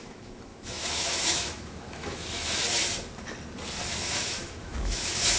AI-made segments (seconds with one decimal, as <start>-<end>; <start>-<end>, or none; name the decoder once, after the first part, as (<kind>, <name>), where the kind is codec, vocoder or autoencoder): 0.0-2.6 (autoencoder, DAC-VAE); 3.8-5.4

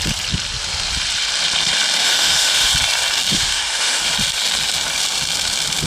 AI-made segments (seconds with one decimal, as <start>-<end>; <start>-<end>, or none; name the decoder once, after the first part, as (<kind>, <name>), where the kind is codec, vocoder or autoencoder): 2.0-2.7 (autoencoder, DAC-VAE); 3.3-4.0

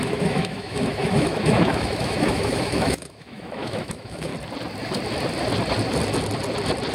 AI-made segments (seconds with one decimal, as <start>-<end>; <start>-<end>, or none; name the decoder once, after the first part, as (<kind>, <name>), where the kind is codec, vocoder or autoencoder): 0.0-4.3 (autoencoder, DAC-VAE)